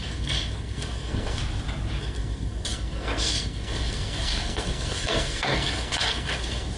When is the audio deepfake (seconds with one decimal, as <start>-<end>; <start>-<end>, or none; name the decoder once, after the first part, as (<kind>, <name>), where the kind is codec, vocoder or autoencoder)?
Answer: 0.0-1.4 (codec, SNAC); 2.0-6.8